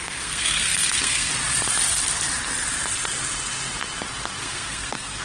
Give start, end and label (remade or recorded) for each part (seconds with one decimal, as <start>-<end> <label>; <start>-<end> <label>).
0.0-1.3 remade; 1.3-4.4 recorded; 4.4-5.2 remade